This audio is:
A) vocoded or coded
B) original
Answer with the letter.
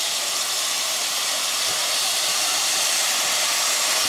A